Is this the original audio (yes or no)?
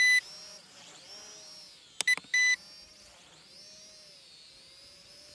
yes